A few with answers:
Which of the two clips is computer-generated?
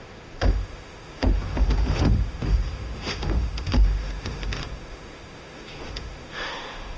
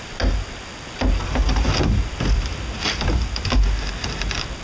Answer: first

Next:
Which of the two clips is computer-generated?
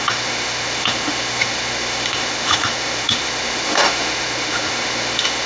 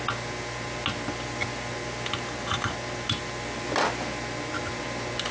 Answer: first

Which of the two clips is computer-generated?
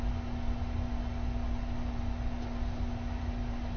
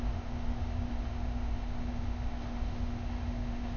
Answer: second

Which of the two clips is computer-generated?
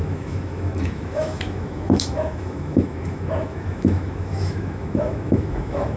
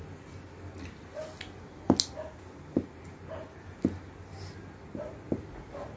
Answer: first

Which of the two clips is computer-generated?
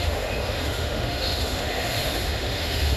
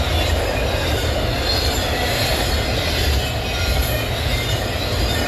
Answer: first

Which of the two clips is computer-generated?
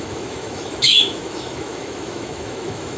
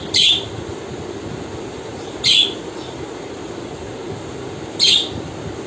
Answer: first